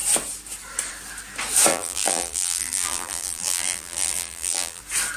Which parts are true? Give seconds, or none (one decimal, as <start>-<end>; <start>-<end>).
0.0-1.7; 4.8-5.2